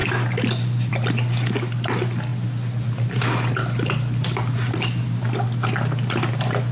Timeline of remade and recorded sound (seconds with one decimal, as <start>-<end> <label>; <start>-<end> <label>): 0.0-6.7 recorded